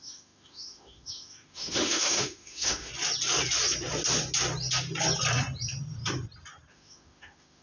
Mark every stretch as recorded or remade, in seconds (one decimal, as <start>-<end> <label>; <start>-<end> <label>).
0.0-2.9 remade; 2.9-6.7 recorded; 6.7-7.6 remade